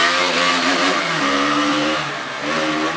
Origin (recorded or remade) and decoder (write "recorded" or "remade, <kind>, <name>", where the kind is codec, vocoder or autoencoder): remade, vocoder, BigVGAN v2